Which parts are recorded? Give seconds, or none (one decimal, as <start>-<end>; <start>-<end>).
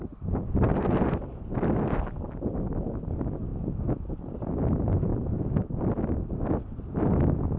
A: 0.0-7.6